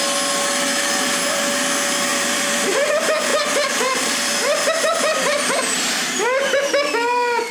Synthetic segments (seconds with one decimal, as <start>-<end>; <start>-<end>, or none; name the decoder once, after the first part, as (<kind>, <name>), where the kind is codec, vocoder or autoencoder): 2.1-2.9 (vocoder, BigVGAN v2); 3.3-6.9